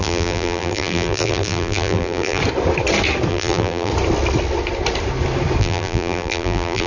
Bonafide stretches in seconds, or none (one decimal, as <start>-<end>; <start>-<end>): 2.4-3.3; 3.9-5.6